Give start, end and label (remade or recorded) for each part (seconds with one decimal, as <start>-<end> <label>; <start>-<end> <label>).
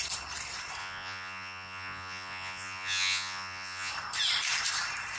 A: 0.0-0.8 recorded; 0.8-3.9 remade; 3.9-5.2 recorded